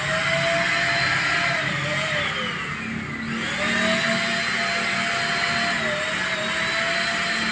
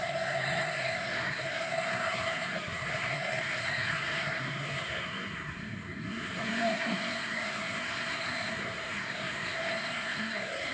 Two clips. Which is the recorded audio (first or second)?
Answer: first